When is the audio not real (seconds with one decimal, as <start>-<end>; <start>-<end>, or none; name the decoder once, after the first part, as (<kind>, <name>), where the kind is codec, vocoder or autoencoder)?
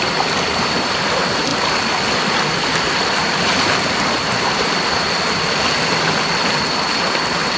none